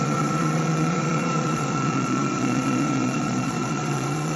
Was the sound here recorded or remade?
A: remade